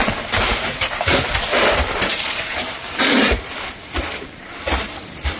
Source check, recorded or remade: remade